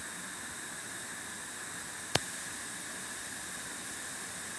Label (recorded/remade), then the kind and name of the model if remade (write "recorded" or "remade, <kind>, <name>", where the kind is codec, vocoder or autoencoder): recorded